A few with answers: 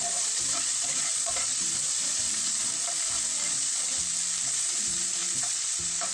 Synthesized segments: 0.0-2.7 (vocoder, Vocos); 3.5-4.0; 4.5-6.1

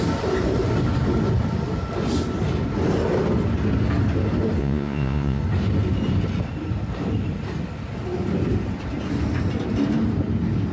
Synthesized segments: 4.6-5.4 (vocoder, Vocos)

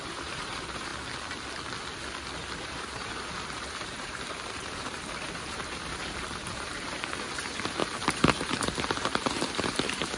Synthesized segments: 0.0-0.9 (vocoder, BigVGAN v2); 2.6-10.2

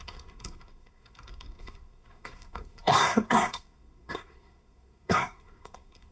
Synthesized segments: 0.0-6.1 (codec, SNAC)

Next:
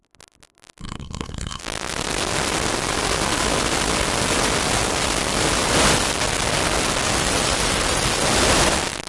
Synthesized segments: 0.8-1.6 (codec, SNAC)

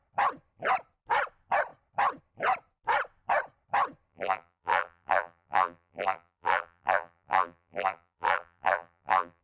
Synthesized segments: 4.1-9.4 (vocoder, BigVGAN v2)